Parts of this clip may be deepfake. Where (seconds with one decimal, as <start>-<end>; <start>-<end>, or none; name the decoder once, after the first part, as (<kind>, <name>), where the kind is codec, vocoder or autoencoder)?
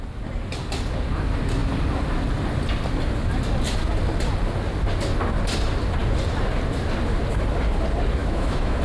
8.2-8.8 (autoencoder, DAC-VAE)